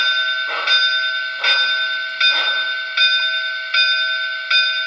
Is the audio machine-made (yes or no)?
no